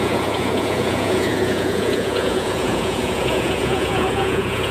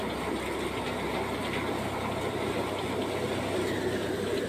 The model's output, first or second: first